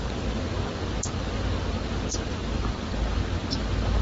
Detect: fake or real real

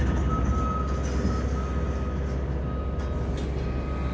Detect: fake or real real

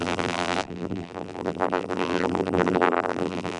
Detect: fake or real fake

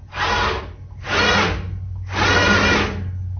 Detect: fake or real real